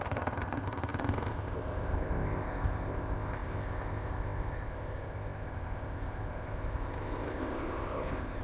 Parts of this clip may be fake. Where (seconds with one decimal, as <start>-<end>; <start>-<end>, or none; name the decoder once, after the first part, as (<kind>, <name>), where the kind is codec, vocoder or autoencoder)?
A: 0.0-8.4 (codec, ZipCodec)